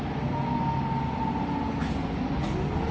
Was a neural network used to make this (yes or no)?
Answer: no